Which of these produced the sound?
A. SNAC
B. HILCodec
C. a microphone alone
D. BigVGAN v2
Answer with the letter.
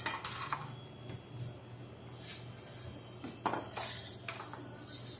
C